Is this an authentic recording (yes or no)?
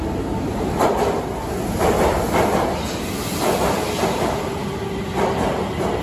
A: yes